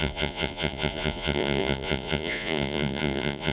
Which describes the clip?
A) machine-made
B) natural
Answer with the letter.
A